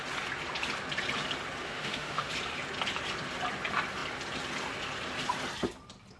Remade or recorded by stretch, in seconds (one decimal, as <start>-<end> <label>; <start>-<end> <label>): 0.0-1.6 recorded; 1.6-2.3 remade; 2.3-6.2 recorded